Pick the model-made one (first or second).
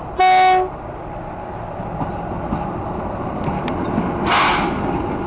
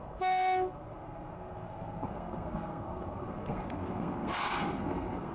second